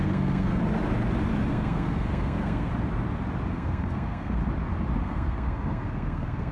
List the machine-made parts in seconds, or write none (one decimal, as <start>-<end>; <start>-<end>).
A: 0.0-0.6; 1.5-2.7; 3.5-4.4; 5.0-6.5

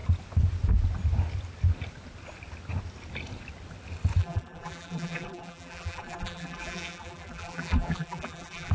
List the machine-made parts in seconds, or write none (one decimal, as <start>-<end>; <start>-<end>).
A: 4.2-8.7

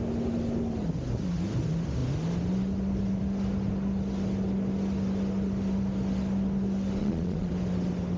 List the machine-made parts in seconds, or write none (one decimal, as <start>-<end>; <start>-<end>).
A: 7.0-7.5

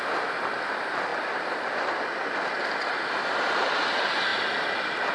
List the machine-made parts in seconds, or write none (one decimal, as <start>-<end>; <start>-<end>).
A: 1.1-2.3

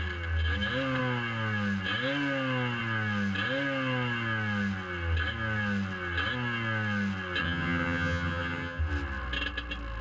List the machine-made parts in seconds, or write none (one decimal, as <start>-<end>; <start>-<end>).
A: 7.4-8.8

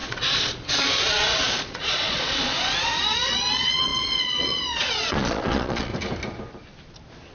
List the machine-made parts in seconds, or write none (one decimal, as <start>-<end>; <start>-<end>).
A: 0.0-5.9

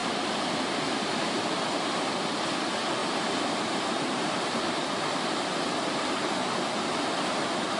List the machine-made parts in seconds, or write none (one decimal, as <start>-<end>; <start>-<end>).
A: 0.0-2.2; 3.0-5.6

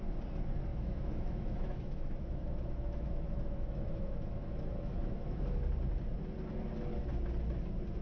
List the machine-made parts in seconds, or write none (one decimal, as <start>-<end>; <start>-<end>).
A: 0.7-5.4